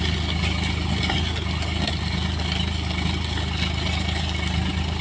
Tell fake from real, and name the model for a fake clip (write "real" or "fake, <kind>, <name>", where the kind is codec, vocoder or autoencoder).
real